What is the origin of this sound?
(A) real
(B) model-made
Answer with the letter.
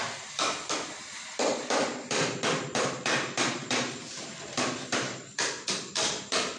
B